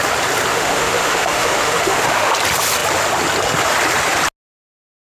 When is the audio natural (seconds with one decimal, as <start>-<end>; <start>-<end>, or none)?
0.0-0.5; 2.3-5.1